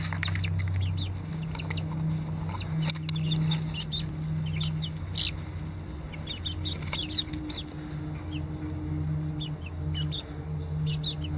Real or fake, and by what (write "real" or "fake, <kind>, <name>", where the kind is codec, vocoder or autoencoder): real